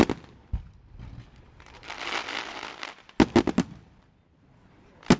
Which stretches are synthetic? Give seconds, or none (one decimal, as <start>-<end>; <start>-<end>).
none